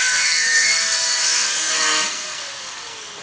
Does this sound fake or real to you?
fake